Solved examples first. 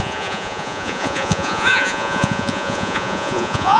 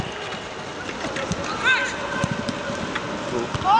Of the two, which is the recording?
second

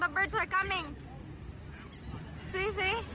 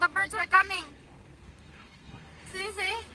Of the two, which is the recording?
first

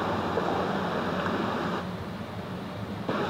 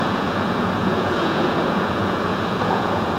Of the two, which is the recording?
first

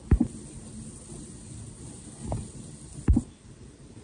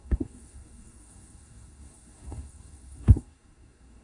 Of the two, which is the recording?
first